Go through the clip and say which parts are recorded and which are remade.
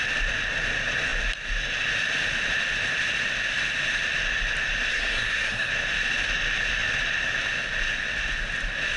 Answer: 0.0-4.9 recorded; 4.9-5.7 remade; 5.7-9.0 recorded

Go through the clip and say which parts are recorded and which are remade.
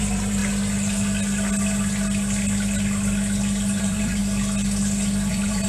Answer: 0.0-0.4 remade; 0.4-3.8 recorded; 3.8-4.2 remade; 4.2-5.3 recorded; 5.3-5.7 remade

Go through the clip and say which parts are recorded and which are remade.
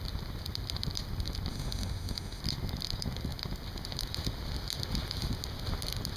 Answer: 0.0-1.5 recorded; 1.5-2.4 remade; 2.4-6.2 recorded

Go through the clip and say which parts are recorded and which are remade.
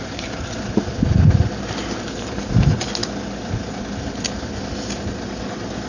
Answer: 0.0-5.9 recorded